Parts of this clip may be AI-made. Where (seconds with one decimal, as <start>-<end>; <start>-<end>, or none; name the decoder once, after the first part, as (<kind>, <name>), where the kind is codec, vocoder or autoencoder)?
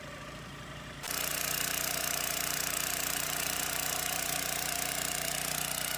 1.3-4.9 (vocoder, BigVGAN v2)